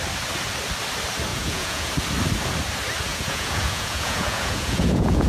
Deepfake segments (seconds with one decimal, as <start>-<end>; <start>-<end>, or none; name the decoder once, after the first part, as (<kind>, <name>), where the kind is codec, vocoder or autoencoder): 1.3-1.9 (vocoder, Vocos); 3.1-5.3